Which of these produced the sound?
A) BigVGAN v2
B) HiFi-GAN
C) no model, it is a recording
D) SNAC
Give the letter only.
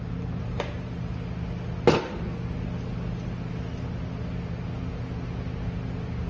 C